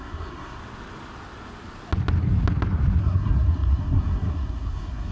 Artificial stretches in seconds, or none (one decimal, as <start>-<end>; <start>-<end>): 0.0-0.6; 3.0-5.1